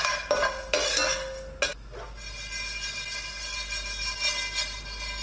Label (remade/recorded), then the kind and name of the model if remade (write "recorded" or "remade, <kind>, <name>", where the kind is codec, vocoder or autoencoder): recorded